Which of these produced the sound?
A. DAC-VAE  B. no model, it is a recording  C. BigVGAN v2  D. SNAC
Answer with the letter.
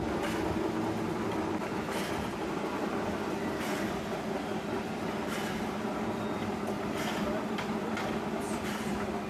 B